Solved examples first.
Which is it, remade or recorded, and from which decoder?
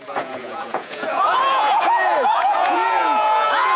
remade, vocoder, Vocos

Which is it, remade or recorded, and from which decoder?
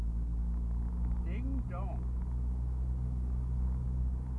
recorded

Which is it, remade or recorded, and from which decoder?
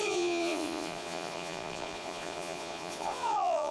remade, vocoder, Vocos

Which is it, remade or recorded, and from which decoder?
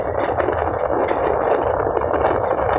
recorded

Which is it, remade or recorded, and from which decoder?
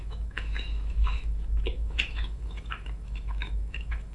remade, autoencoder, DAC-VAE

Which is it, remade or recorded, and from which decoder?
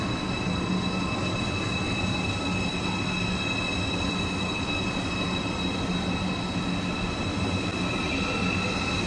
recorded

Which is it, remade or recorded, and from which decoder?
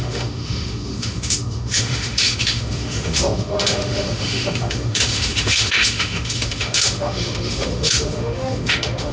remade, autoencoder, DAC-VAE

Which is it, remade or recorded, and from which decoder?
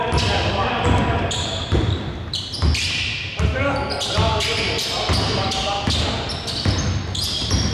recorded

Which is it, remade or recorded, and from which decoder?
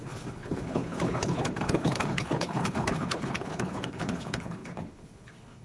remade, codec, HILCodec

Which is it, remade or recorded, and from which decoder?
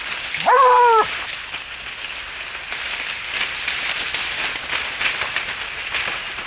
recorded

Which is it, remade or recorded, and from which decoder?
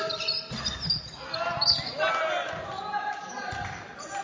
recorded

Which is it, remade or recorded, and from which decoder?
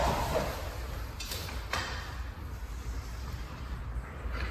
recorded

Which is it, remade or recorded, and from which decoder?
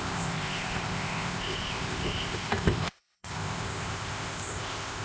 remade, codec, ZipCodec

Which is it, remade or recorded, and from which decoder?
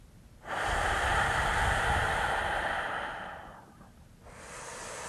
recorded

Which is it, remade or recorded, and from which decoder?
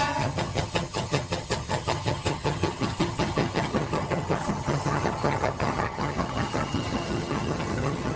remade, vocoder, HiFi-GAN